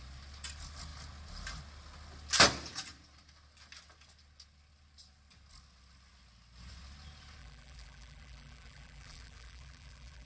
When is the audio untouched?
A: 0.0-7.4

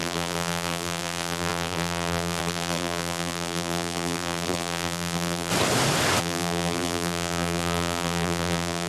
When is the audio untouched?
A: 5.5-6.2

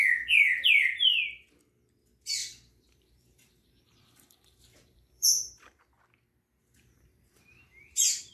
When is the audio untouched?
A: 0.0-2.4; 5.8-6.6

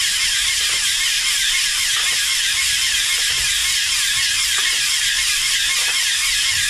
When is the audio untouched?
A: 3.6-4.2